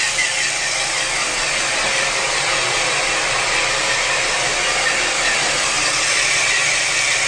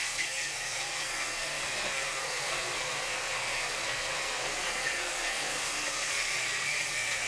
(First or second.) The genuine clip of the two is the first